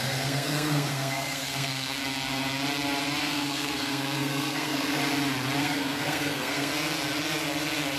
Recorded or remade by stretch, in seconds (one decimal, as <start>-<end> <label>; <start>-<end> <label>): 0.0-2.0 remade; 2.0-3.2 recorded; 3.2-5.0 remade; 5.0-5.6 recorded; 5.6-6.7 remade; 6.7-8.0 recorded